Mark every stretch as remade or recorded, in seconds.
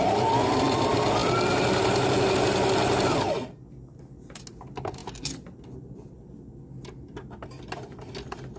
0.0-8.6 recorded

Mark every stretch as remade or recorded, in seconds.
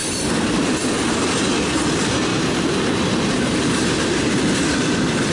0.0-0.9 remade; 0.9-2.3 recorded; 2.3-4.4 remade; 4.4-5.3 recorded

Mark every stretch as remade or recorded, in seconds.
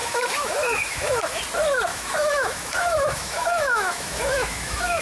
0.0-1.4 remade; 1.4-1.9 recorded; 1.9-5.0 remade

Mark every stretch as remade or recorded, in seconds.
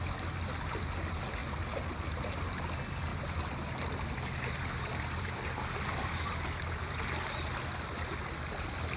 0.0-3.1 recorded; 3.1-5.2 remade; 5.2-9.0 recorded